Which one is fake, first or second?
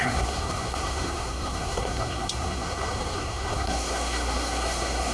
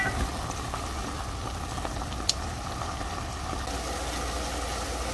first